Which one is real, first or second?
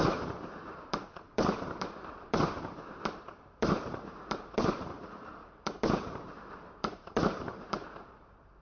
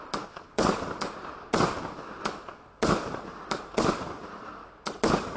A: second